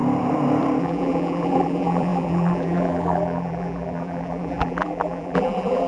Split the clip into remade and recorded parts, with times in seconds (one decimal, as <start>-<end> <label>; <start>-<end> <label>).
0.0-0.8 recorded; 0.8-5.9 remade

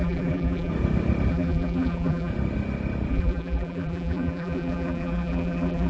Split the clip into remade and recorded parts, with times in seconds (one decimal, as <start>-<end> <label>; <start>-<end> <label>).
0.0-0.7 remade; 0.7-1.3 recorded; 1.3-2.3 remade; 2.3-3.1 recorded; 3.1-5.9 remade

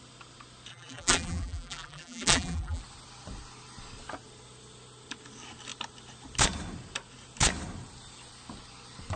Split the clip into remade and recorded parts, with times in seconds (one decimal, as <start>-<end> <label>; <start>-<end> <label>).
0.0-0.7 recorded; 0.7-2.8 remade; 2.8-9.2 recorded

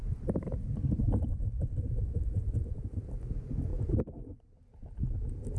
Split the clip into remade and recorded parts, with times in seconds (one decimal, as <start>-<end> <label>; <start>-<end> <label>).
0.0-3.1 remade; 3.1-3.7 recorded; 3.7-4.4 remade; 4.4-5.6 recorded

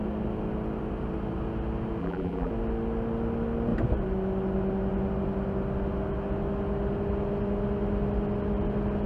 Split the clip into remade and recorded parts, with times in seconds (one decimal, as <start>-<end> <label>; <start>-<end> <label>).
0.0-2.0 recorded; 2.0-2.5 remade; 2.5-9.1 recorded

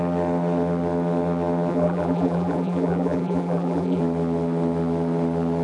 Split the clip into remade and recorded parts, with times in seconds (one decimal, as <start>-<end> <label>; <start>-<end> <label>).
0.0-1.7 recorded; 1.7-4.0 remade; 4.0-5.6 recorded

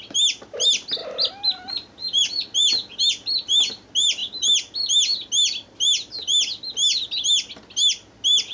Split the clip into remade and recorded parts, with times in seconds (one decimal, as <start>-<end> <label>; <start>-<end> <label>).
0.0-8.5 recorded

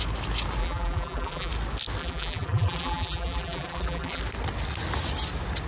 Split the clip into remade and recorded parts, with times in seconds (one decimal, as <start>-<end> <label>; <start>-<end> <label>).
0.0-0.6 recorded; 0.6-1.5 remade; 1.5-2.0 recorded; 2.0-4.2 remade; 4.2-5.7 recorded